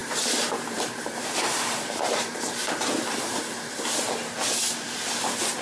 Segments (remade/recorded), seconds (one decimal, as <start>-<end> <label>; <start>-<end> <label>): 0.0-3.4 remade; 3.4-5.6 recorded